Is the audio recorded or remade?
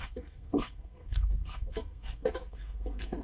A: remade